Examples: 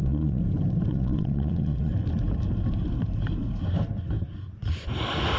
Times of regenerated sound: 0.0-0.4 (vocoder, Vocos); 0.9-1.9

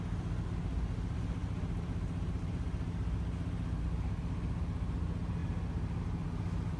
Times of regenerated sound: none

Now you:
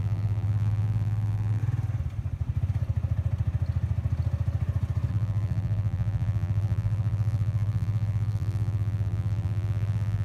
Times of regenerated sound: 0.0-1.6 (vocoder, BigVGAN v2); 5.1-10.2